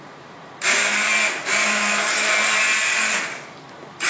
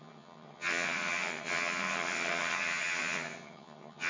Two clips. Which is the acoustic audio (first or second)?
first